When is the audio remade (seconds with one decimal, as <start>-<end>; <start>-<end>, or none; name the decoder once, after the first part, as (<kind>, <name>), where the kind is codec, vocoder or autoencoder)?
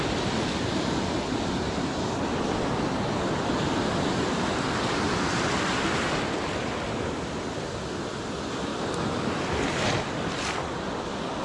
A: none